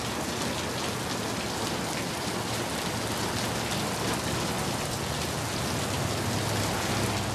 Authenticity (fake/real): real